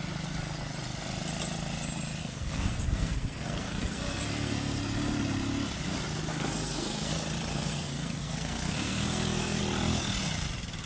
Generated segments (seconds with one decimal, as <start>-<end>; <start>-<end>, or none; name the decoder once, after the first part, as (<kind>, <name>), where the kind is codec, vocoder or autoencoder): 2.2-4.8 (codec, SNAC); 6.3-7.1; 7.5-9.6